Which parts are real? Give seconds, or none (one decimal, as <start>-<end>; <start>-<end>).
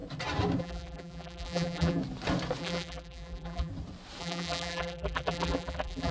0.0-0.6; 2.0-2.6; 3.7-4.2